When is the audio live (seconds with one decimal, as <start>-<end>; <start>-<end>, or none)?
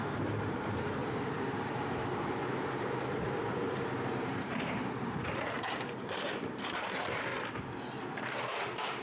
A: 7.3-8.0